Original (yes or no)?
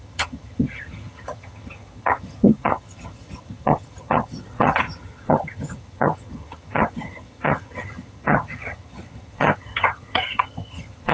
no